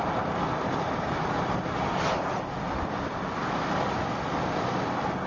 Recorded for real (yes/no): yes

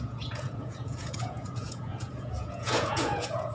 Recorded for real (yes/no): no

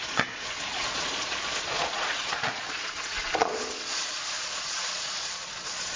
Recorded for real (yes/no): no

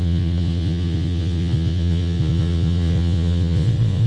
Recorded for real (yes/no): no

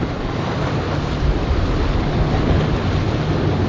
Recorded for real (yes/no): yes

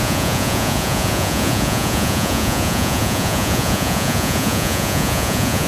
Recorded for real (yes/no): no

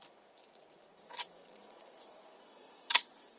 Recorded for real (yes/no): no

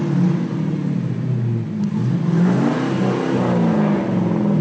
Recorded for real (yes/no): yes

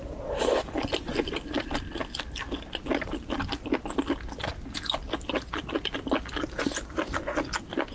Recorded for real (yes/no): yes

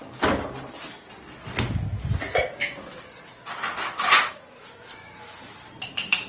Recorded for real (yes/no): yes